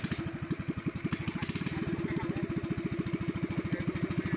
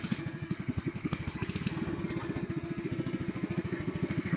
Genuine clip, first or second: first